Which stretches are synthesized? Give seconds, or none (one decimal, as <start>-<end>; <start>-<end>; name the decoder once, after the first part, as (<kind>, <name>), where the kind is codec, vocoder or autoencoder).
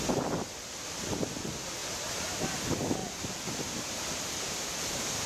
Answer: none